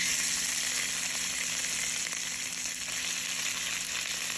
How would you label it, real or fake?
real